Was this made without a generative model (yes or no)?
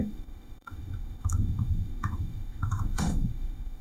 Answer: no